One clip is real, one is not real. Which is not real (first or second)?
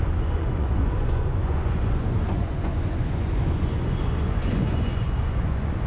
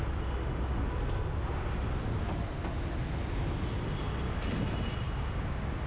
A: first